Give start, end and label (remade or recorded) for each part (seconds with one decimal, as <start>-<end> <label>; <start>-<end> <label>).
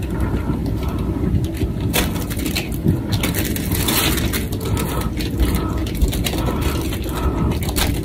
0.0-8.0 recorded